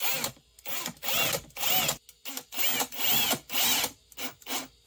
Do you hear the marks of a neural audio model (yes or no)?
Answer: no